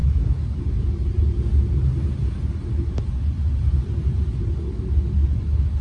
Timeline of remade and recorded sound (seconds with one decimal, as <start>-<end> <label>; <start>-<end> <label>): 0.0-5.8 recorded